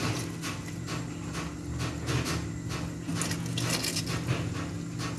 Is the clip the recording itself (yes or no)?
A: yes